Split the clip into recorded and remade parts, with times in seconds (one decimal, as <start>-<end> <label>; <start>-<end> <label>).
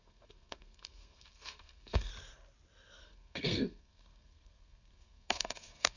0.0-2.1 remade; 2.1-3.0 recorded; 3.0-6.0 remade